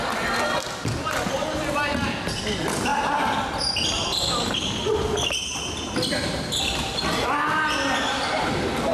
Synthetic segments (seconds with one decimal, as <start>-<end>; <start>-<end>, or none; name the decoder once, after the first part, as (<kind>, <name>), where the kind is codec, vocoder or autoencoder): 2.9-3.5 (vocoder, BigVGAN v2)